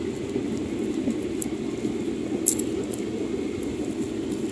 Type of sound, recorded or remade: recorded